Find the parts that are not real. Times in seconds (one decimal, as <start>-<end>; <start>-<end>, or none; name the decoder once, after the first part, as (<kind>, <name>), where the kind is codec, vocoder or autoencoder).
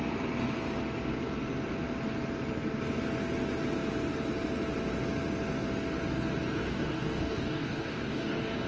6.6-8.7 (codec, DAC)